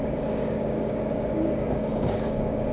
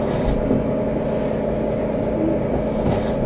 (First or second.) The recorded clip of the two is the second